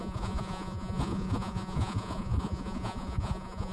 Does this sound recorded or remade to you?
remade